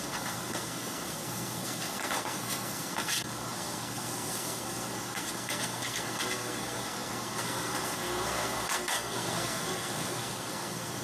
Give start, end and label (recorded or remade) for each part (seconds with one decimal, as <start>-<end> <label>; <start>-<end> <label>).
0.0-11.0 remade